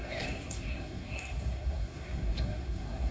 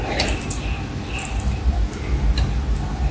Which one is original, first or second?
second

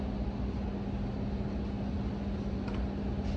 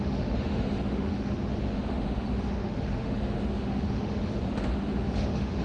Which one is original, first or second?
first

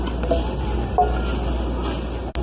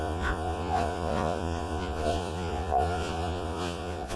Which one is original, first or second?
first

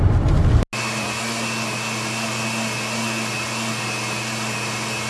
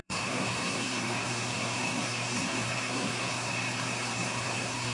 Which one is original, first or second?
first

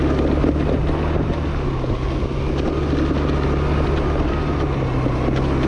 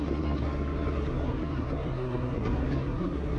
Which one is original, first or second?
first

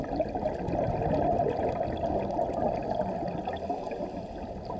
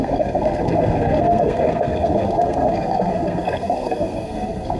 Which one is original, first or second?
first